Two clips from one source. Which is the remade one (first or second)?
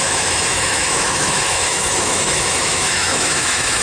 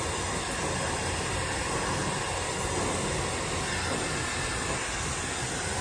first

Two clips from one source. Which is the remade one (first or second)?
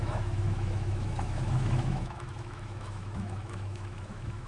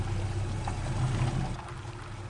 first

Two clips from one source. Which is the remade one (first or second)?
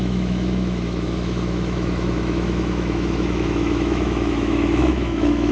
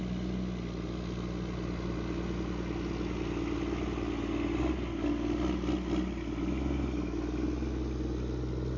first